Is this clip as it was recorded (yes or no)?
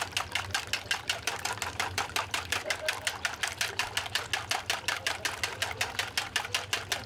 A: yes